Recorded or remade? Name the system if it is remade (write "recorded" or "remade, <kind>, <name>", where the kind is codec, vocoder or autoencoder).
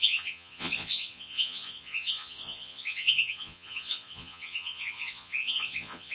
remade, vocoder, Vocos